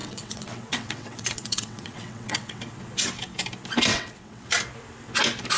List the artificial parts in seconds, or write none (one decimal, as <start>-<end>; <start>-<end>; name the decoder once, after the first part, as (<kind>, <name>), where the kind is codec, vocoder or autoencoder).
0.0-2.6 (vocoder, WaveNeXt); 3.9-4.6